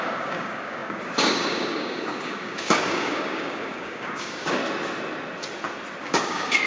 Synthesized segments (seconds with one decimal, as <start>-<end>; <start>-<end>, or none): 0.0-4.6; 6.0-6.7